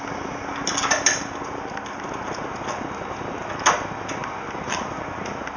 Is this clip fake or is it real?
real